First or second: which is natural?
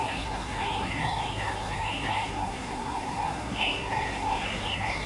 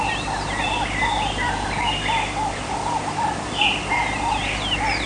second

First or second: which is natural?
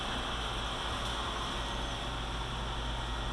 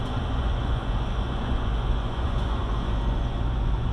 first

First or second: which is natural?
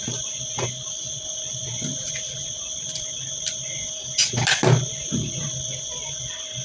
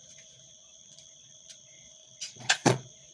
first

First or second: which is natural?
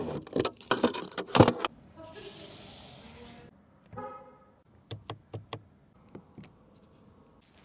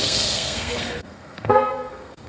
first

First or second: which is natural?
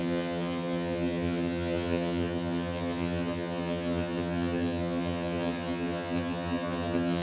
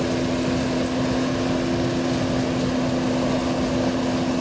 second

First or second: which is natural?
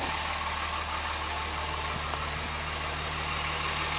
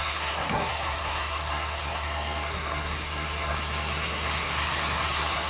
first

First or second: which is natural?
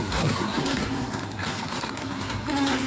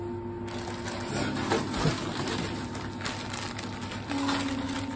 second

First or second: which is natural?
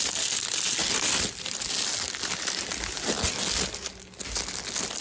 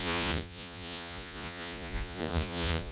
first